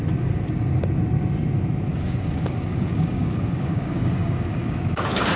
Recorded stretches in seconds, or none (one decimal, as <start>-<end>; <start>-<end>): 0.0-1.9